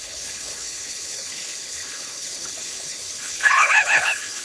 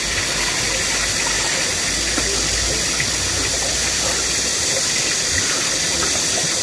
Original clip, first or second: second